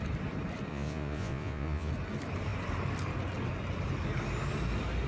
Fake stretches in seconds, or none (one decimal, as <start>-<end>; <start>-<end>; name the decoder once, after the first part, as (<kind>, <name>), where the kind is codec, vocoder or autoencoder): 0.7-1.9 (vocoder, Vocos)